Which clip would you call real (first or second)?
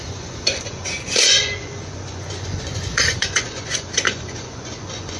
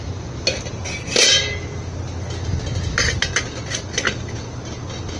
second